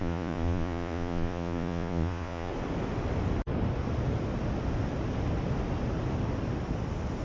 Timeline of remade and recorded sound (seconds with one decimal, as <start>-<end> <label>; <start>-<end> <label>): 0.0-2.5 remade; 2.5-7.2 recorded